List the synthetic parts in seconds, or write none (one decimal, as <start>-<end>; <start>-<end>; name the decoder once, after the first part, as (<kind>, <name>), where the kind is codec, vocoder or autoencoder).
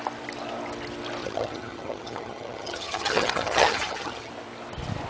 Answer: 1.2-4.3 (vocoder, HiFi-GAN)